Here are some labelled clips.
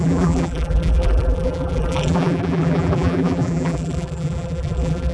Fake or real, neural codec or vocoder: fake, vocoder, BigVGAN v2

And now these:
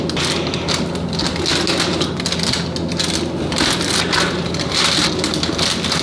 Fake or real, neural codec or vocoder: real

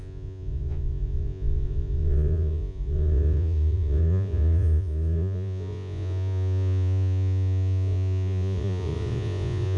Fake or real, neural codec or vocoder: fake, vocoder, Vocos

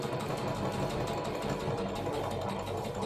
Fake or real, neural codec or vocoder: real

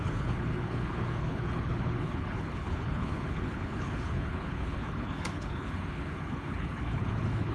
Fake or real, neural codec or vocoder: fake, codec, HILCodec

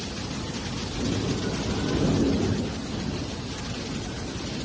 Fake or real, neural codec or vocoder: real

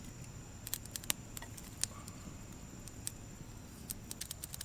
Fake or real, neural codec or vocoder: real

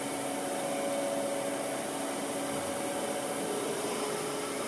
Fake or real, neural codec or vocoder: real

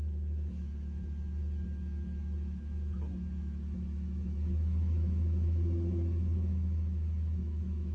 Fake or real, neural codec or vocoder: fake, autoencoder, DAC-VAE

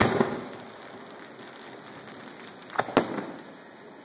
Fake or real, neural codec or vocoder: real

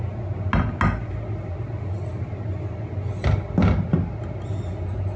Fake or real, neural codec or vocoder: real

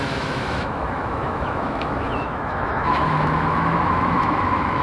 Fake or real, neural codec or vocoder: fake, autoencoder, DAC-VAE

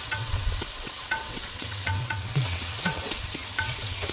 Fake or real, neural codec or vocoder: fake, vocoder, WaveNeXt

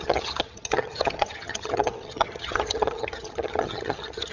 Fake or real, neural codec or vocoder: fake, vocoder, HiFi-GAN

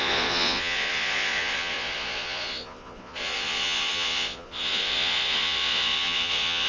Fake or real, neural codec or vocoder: fake, vocoder, Vocos